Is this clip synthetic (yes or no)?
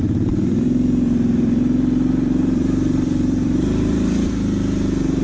yes